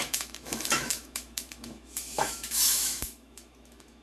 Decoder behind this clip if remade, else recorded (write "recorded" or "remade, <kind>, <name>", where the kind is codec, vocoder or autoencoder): remade, autoencoder, DAC-VAE